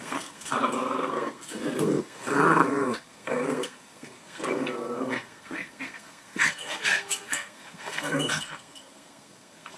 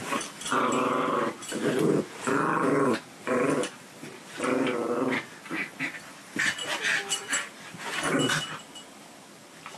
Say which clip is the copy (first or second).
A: first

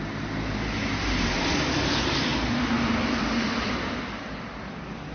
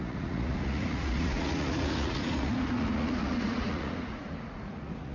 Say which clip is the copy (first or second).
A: second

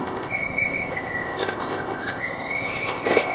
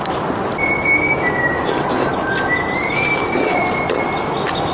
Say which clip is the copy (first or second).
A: first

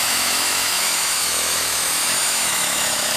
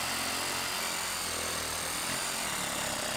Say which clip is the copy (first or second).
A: first